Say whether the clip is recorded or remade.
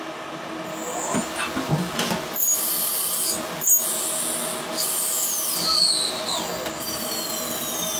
recorded